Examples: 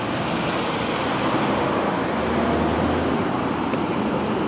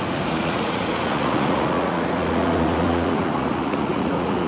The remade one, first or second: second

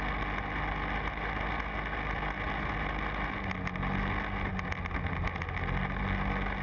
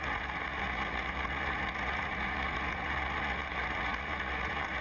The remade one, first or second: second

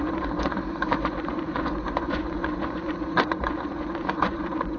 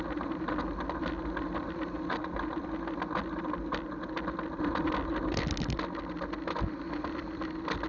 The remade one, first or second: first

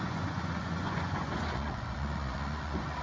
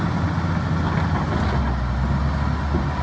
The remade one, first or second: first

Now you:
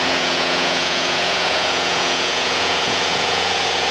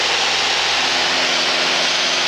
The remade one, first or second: first